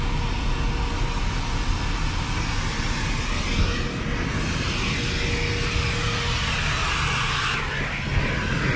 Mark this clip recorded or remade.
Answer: recorded